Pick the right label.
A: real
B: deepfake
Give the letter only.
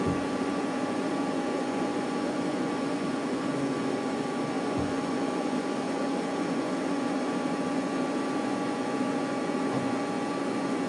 B